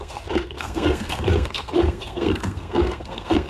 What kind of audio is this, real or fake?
fake